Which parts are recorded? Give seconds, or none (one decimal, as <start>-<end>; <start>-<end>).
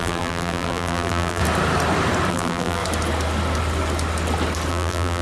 1.4-2.3; 2.8-4.7